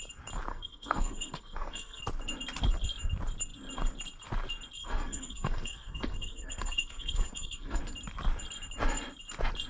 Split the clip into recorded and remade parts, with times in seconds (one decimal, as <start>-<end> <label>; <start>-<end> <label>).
0.0-0.5 recorded; 0.5-2.0 remade; 2.0-4.8 recorded; 4.8-7.8 remade; 7.8-9.7 recorded